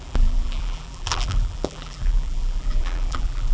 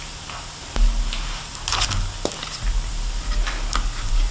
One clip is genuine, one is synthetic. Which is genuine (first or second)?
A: second